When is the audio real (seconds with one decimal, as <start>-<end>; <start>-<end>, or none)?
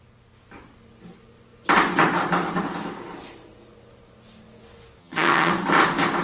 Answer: 0.0-5.0; 5.5-6.2